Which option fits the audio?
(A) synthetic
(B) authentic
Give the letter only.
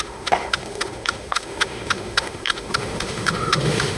A